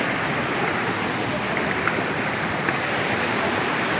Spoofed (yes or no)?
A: yes